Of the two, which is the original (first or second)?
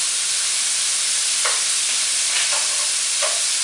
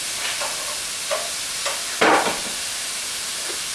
second